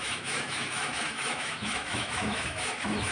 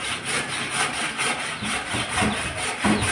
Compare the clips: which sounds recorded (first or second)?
second